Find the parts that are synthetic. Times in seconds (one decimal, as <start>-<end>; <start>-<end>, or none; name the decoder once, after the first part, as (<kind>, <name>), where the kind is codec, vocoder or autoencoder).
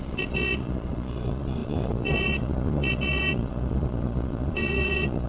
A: 0.0-5.3 (vocoder, Vocos)